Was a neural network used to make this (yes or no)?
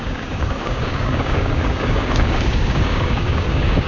yes